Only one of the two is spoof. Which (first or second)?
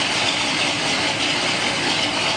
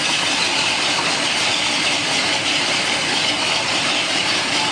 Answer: second